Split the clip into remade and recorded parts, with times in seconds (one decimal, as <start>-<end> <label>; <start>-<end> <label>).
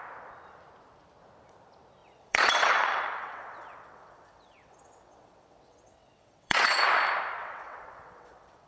0.0-2.0 recorded; 2.0-6.8 remade; 6.8-7.4 recorded; 7.4-8.7 remade